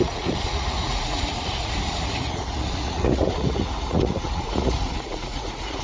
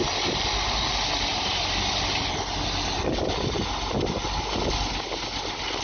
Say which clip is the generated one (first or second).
first